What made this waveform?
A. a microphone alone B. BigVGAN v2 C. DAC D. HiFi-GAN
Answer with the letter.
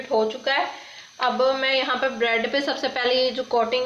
A